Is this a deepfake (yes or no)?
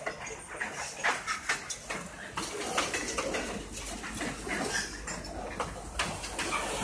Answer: no